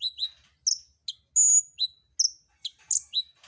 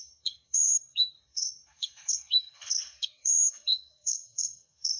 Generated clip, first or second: second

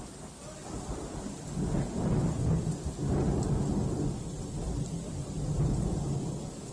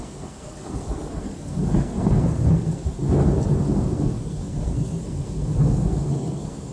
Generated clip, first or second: second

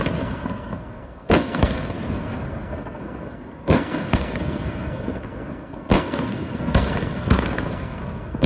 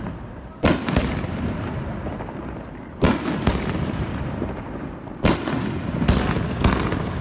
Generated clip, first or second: first